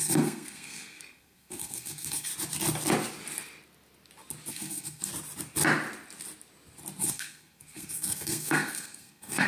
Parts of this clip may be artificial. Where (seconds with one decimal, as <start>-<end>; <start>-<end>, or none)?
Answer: 0.0-2.3; 4.5-5.1; 7.0-9.5